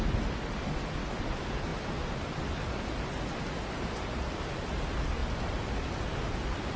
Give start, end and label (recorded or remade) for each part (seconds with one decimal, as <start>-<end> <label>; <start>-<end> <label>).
0.0-6.8 recorded